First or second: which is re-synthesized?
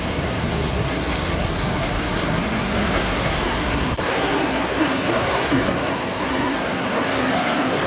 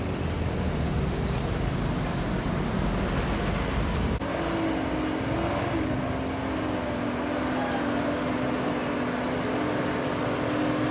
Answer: first